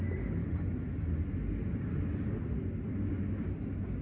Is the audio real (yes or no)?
yes